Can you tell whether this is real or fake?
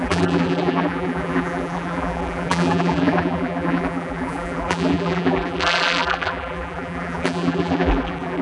fake